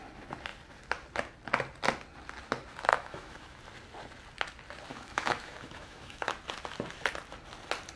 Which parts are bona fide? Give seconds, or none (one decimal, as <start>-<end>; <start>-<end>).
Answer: 0.0-2.9; 3.6-4.9; 6.3-8.0

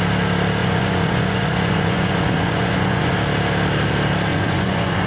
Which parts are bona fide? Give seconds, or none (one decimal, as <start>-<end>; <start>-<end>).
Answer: 0.0-0.6; 3.1-4.3

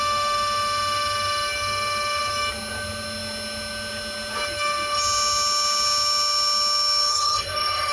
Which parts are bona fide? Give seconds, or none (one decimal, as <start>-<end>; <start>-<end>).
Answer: 0.0-7.1

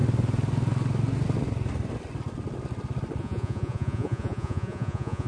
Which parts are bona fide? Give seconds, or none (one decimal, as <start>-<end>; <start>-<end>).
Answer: 0.0-3.2

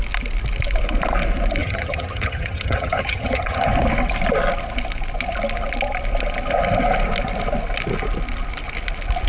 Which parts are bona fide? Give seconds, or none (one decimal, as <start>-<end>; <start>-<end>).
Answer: 0.0-1.6; 3.7-9.3